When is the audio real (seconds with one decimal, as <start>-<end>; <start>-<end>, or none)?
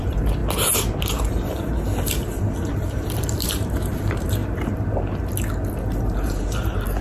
0.4-1.0; 4.4-5.7